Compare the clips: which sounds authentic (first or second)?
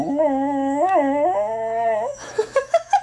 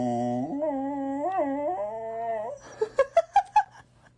second